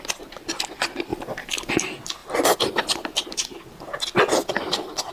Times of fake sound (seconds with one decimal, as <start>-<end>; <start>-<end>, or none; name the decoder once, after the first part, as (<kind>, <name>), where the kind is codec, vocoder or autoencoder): none